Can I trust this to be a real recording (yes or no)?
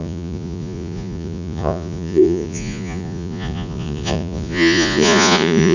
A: no